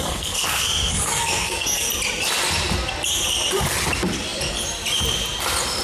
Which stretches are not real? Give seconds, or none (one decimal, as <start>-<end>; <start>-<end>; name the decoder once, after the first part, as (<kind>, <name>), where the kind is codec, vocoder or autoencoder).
0.0-1.9 (codec, SNAC)